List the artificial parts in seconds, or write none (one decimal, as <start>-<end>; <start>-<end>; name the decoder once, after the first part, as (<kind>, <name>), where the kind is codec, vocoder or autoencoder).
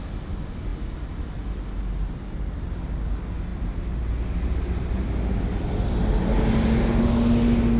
none